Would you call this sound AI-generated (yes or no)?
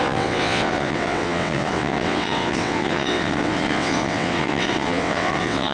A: yes